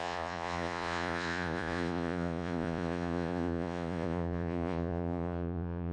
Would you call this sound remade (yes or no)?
yes